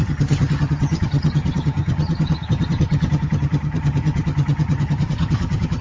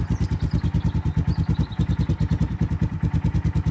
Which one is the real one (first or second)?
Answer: second